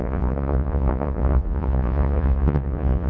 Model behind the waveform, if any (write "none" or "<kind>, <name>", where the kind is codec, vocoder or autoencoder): vocoder, Vocos